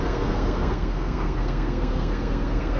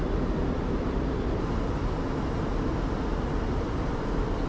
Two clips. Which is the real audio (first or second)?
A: second